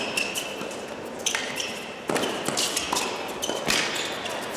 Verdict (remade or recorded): recorded